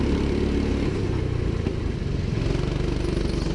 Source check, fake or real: real